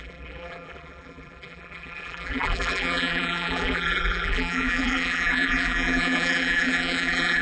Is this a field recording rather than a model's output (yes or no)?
no